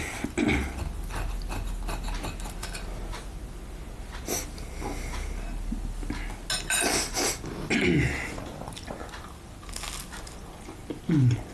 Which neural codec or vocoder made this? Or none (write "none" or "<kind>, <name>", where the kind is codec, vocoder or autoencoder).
none